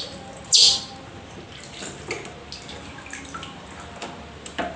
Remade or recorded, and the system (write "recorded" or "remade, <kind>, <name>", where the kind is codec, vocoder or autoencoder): recorded